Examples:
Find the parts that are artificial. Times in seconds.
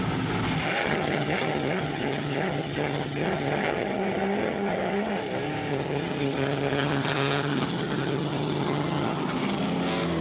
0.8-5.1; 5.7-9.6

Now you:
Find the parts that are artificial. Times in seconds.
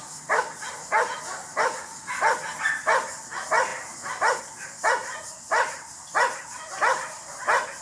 none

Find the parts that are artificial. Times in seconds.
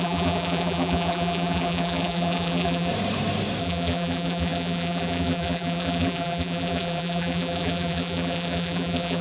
0.0-2.9; 3.6-9.2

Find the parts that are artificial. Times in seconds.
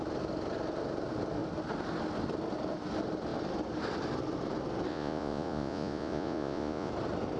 4.9-6.9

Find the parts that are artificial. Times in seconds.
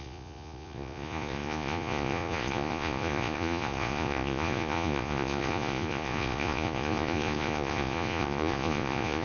0.0-9.2